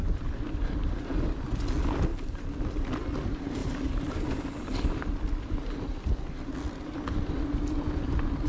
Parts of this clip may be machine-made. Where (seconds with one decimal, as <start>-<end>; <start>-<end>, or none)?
2.1-2.6; 3.6-4.4